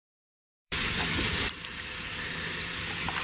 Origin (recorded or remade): remade